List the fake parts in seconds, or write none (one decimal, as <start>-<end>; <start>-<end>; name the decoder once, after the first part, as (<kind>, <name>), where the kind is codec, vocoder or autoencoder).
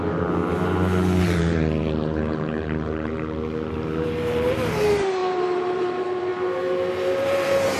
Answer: 0.0-0.4 (vocoder, BigVGAN v2); 1.2-6.3; 7.2-7.8